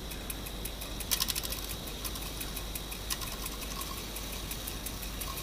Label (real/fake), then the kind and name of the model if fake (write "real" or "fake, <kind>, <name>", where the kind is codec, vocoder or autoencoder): real